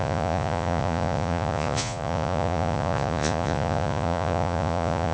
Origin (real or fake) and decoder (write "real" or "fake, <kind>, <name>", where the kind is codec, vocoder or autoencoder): fake, vocoder, Vocos